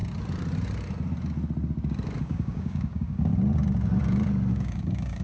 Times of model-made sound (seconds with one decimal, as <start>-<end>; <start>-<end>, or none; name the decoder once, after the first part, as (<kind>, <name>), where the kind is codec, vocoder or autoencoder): 2.2-3.3 (codec, DAC); 4.5-5.2